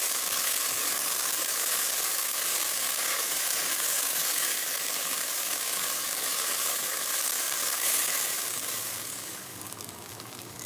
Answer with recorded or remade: remade